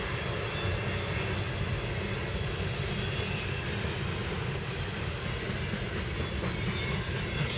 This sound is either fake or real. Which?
real